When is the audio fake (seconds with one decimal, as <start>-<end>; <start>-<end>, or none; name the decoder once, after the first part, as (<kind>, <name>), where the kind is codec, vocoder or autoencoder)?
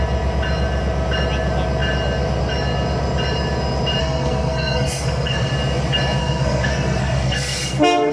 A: 4.0-5.5 (codec, SNAC); 6.2-8.1